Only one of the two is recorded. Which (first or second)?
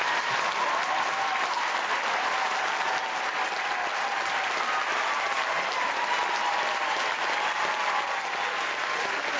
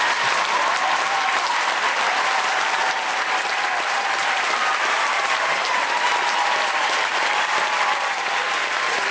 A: first